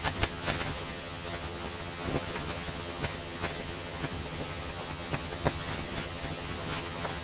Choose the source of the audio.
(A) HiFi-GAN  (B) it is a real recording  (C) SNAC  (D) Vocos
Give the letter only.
A